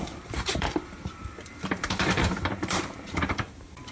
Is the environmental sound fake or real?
fake